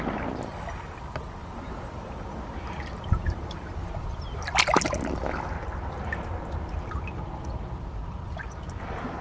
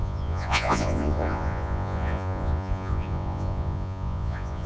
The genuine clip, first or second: first